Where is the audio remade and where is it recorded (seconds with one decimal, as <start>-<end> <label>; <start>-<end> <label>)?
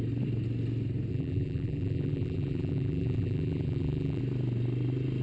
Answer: 0.0-1.1 recorded; 1.1-4.2 remade; 4.2-5.2 recorded